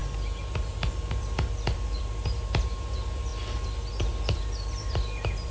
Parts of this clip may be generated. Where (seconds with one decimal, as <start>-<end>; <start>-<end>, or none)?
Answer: none